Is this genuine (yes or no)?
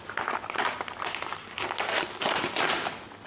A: yes